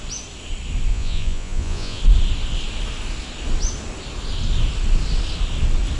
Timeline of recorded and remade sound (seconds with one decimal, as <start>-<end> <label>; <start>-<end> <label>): 0.0-0.9 recorded; 0.9-2.0 remade; 2.0-6.0 recorded